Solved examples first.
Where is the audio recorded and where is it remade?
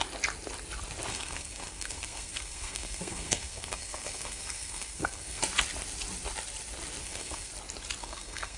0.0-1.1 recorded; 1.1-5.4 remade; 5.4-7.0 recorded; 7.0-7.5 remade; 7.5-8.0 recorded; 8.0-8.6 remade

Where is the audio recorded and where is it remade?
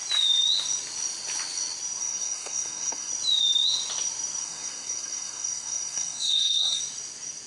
0.0-2.0 recorded; 2.0-3.1 remade; 3.1-4.4 recorded; 4.4-6.8 remade; 6.8-7.5 recorded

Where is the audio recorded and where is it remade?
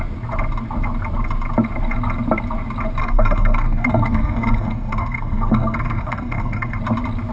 0.0-3.0 recorded; 3.0-6.8 remade; 6.8-7.3 recorded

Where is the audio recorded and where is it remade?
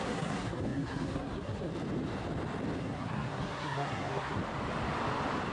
0.0-1.7 remade; 1.7-2.8 recorded; 2.8-4.4 remade; 4.4-5.5 recorded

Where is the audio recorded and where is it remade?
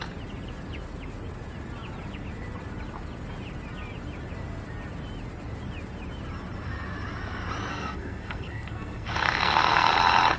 0.0-7.7 recorded; 7.7-9.9 remade; 9.9-10.4 recorded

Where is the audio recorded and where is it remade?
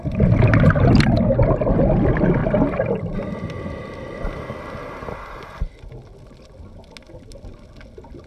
0.0-8.3 recorded